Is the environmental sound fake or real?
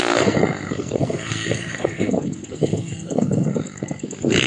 fake